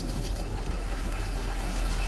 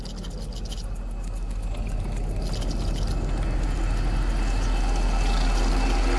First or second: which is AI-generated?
first